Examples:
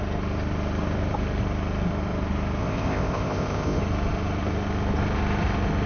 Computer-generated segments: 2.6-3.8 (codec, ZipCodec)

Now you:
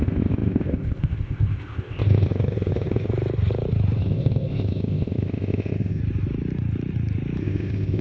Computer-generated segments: 0.0-3.1 (codec, ZipCodec); 4.0-6.0; 7.4-8.0

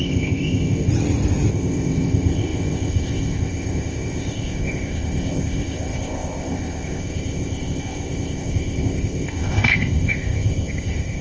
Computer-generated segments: 0.0-0.9 (codec, ZipCodec); 1.5-11.2